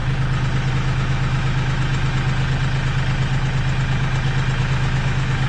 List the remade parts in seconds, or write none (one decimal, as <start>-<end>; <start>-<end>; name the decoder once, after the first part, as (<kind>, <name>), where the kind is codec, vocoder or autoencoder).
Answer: 0.7-1.9 (autoencoder, DAC-VAE); 4.6-5.5